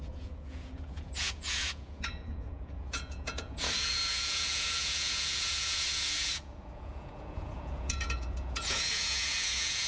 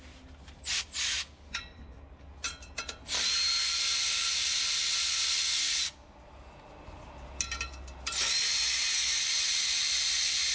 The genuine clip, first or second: second